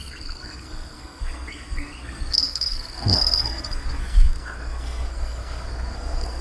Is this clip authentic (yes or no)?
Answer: no